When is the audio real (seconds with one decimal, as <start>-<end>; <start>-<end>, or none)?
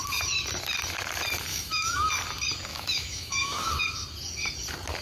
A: 0.0-1.5; 2.1-2.7; 3.8-5.0